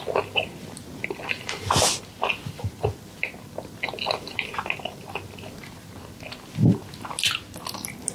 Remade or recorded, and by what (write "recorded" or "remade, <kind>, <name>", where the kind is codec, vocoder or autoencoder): recorded